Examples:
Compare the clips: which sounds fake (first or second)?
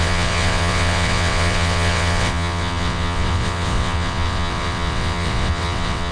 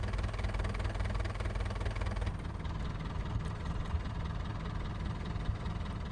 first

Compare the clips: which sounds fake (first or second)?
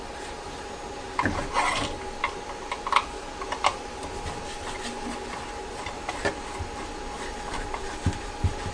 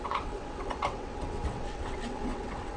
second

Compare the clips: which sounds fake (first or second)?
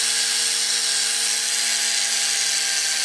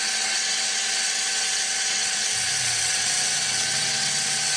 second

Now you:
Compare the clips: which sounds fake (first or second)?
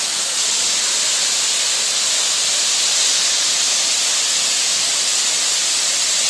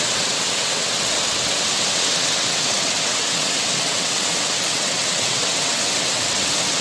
second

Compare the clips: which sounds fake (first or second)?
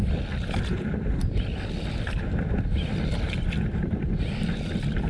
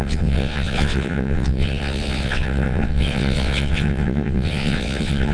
second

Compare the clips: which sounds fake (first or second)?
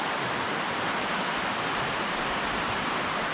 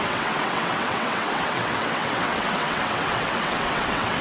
second